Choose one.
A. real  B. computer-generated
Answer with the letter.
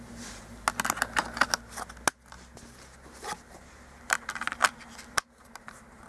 A